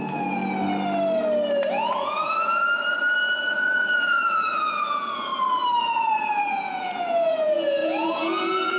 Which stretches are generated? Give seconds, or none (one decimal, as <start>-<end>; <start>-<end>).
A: 0.0-0.4; 1.7-2.6; 3.5-5.3; 5.8-8.8